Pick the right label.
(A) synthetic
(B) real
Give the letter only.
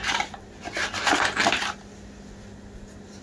B